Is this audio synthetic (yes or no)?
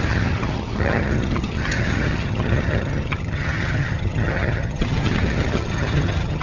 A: yes